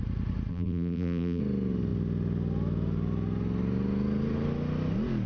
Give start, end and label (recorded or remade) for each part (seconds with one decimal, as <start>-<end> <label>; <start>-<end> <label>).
0.0-0.5 recorded; 0.5-1.4 remade; 1.4-5.3 recorded